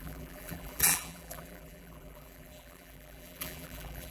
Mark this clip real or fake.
fake